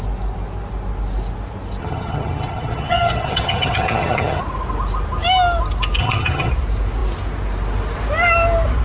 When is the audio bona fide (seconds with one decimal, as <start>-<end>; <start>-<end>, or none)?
0.0-1.8; 4.4-6.0; 6.5-8.8